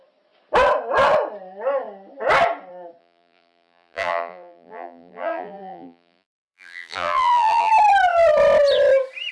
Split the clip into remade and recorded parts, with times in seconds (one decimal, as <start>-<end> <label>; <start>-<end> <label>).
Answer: 0.0-3.0 recorded; 3.0-7.7 remade; 7.7-9.3 recorded